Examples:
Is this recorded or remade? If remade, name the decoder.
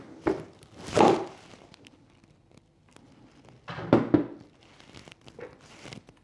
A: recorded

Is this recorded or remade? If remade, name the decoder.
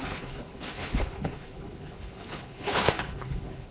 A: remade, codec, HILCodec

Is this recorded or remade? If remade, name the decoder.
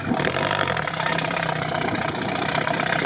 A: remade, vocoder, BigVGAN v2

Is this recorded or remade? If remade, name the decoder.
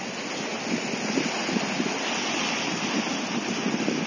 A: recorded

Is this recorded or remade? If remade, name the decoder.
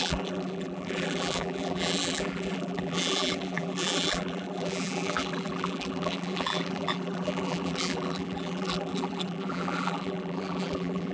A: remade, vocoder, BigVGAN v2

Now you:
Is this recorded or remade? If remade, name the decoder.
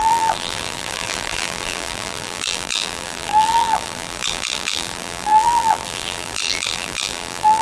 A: remade, vocoder, BigVGAN v2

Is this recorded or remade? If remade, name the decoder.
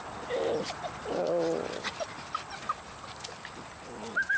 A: recorded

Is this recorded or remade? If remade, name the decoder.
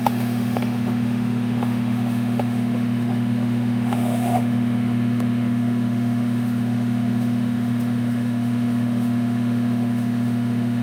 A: remade, autoencoder, DAC-VAE